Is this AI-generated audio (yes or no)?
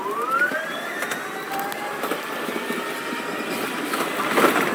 yes